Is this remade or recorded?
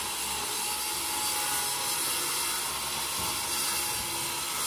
recorded